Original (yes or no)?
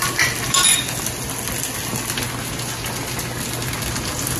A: yes